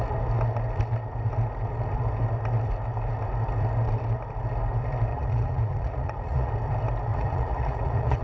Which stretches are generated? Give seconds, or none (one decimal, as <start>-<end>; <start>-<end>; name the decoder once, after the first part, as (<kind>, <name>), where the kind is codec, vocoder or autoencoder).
5.1-6.5 (vocoder, Vocos); 7.1-8.2